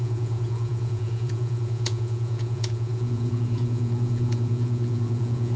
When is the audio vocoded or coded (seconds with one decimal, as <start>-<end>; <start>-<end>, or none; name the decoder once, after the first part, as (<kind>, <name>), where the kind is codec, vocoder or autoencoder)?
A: 0.0-5.6 (vocoder, Vocos)